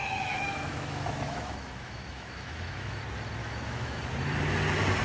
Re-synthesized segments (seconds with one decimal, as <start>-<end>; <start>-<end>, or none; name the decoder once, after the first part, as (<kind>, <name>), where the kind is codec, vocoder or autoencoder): 0.0-3.0 (autoencoder, DAC-VAE); 3.4-4.0